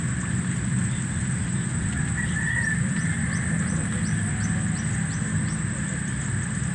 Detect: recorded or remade recorded